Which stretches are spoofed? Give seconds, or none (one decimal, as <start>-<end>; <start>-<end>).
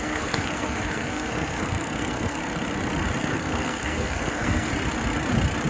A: 0.0-2.4; 3.2-4.7